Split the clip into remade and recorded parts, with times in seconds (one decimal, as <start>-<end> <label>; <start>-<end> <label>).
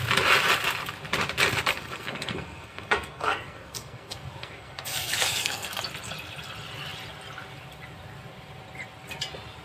0.0-1.7 recorded; 1.7-5.8 remade; 5.8-9.6 recorded